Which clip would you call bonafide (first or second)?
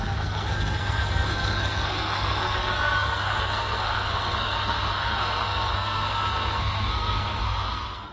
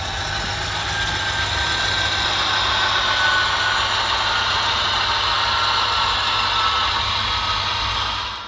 second